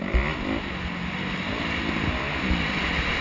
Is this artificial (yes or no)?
no